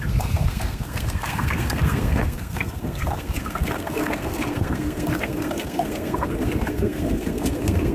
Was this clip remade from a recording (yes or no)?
yes